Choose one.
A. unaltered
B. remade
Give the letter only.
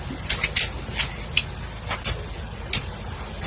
A